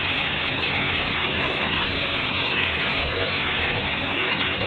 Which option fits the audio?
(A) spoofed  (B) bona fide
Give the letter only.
A